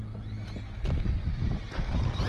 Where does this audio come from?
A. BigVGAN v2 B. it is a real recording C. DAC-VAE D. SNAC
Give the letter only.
B